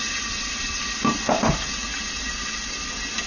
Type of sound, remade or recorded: recorded